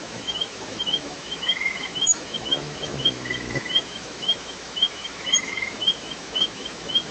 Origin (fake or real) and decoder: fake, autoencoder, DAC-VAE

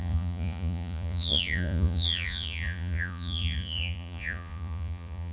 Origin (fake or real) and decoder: fake, vocoder, Vocos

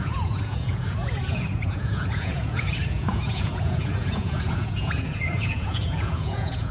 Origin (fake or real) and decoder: fake, vocoder, Vocos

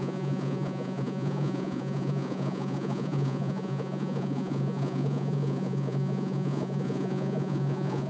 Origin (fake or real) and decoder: fake, vocoder, Vocos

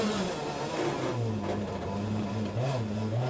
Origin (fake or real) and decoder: real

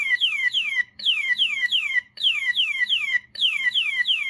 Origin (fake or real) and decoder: fake, codec, DAC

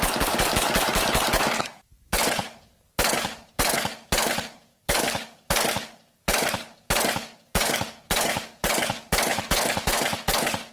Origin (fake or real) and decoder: fake, codec, DAC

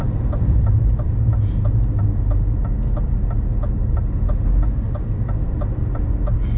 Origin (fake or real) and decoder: real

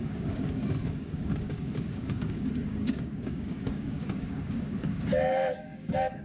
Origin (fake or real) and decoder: fake, codec, DAC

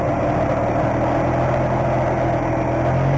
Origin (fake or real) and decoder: real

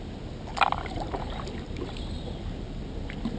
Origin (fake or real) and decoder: real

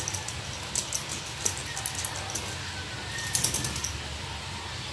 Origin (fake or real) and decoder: real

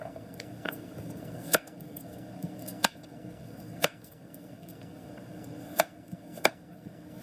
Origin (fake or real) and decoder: fake, codec, SNAC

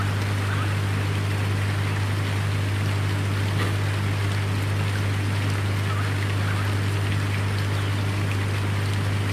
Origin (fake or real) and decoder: real